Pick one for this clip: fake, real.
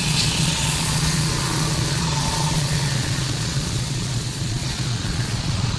fake